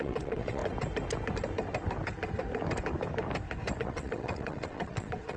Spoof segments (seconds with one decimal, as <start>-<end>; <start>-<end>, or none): 0.0-0.6; 3.8-5.4